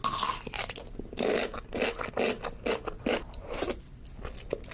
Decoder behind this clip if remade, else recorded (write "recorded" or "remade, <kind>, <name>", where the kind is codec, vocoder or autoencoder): recorded